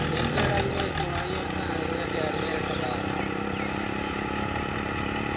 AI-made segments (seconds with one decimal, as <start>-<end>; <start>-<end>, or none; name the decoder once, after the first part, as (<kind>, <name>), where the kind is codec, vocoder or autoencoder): 2.5-3.2 (vocoder, BigVGAN v2)